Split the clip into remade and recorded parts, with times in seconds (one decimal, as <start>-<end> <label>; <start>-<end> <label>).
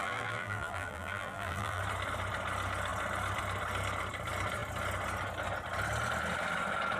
0.0-1.8 remade; 1.8-7.0 recorded